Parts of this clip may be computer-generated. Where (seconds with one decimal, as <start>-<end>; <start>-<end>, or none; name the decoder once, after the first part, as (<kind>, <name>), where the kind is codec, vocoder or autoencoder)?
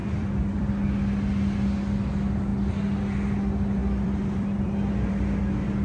0.0-0.7 (vocoder, BigVGAN v2); 3.8-5.1